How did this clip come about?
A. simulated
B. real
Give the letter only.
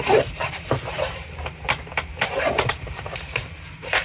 A